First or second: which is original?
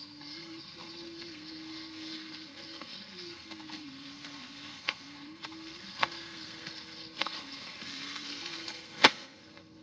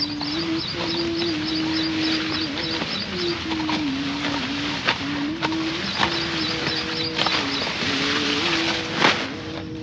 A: second